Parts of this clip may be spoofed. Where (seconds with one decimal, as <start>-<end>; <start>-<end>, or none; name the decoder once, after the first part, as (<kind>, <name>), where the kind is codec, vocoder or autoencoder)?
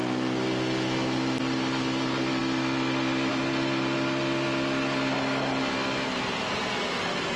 none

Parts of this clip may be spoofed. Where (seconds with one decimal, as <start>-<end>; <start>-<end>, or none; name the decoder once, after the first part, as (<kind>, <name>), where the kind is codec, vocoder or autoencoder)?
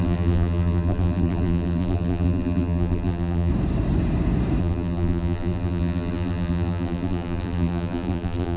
0.0-3.5 (vocoder, BigVGAN v2); 4.6-8.6